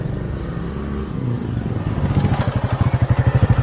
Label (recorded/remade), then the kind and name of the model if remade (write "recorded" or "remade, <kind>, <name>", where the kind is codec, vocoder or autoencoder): recorded